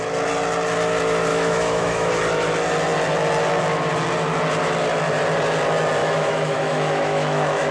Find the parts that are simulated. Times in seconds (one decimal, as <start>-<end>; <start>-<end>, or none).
1.3-2.1; 6.0-7.7